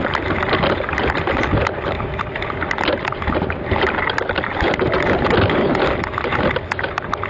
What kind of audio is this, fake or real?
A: real